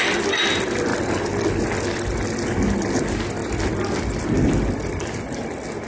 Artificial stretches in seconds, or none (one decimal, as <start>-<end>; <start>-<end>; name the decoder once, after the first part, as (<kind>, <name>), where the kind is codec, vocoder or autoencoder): 0.0-0.9 (vocoder, BigVGAN v2); 3.0-3.4; 4.0-5.9